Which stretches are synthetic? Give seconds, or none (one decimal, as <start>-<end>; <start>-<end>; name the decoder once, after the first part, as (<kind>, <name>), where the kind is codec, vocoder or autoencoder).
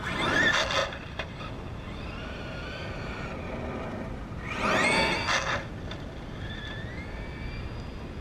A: 0.8-1.4 (vocoder, BigVGAN v2)